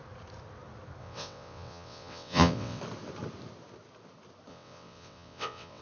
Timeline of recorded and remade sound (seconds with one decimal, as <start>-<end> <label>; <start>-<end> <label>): 0.0-1.0 recorded; 1.0-2.8 remade; 2.8-4.5 recorded; 4.5-5.8 remade